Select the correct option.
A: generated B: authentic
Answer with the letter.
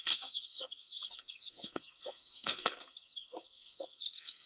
A